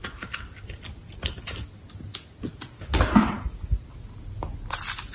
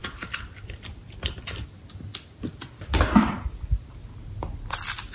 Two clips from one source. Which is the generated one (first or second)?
second